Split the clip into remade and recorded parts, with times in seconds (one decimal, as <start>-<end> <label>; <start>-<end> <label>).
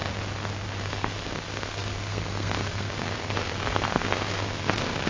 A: 0.0-0.8 recorded; 0.8-5.1 remade